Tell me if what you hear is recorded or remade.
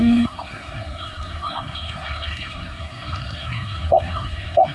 remade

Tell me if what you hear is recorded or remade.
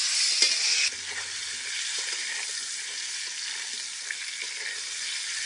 recorded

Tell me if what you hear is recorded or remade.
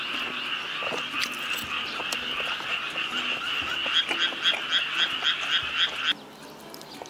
recorded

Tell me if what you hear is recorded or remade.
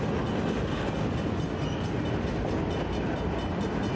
recorded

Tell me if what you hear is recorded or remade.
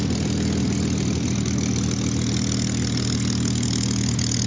recorded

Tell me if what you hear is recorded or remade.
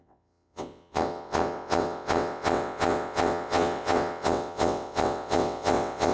remade